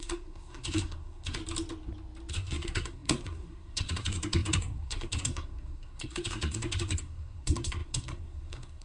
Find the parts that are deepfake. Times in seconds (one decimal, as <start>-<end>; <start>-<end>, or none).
0.0-1.4; 2.3-8.8

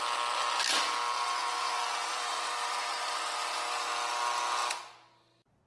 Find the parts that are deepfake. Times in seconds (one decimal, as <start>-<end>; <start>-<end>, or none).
1.4-3.9

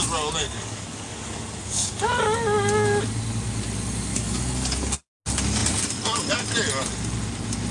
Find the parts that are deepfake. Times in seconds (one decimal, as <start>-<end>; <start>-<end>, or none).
0.4-2.2; 4.1-4.7

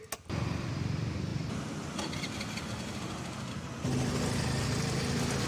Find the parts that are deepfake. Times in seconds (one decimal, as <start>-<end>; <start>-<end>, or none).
none